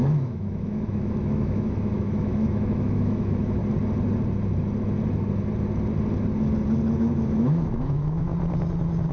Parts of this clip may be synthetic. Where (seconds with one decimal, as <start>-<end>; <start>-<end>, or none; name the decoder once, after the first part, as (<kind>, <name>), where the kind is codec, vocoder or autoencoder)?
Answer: 0.0-3.6 (autoencoder, DAC-VAE); 7.4-8.3